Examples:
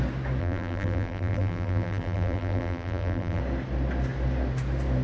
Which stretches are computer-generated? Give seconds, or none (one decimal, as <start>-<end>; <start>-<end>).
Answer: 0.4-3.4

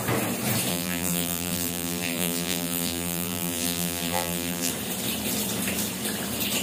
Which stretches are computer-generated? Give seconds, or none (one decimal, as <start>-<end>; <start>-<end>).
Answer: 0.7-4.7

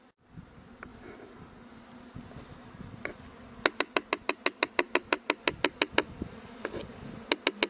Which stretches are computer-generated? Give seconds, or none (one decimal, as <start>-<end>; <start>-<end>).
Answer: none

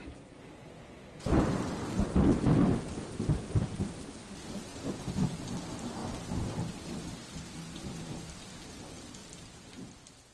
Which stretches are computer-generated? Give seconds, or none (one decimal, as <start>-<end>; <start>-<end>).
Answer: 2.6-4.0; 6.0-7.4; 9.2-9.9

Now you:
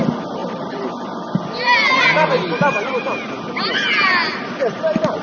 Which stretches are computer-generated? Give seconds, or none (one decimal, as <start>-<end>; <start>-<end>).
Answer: none